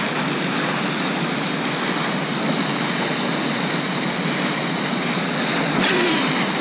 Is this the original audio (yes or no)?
yes